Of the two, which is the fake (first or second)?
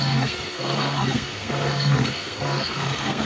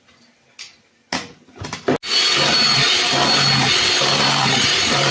first